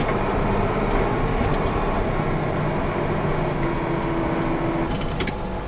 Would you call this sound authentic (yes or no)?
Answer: yes